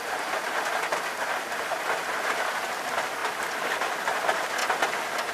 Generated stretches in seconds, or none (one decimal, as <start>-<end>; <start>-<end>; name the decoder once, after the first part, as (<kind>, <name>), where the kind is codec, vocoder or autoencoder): none